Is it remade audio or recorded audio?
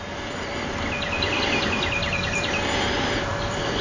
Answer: remade